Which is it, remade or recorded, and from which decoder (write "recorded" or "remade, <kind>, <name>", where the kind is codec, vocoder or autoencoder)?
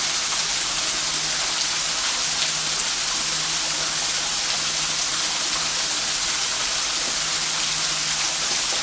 recorded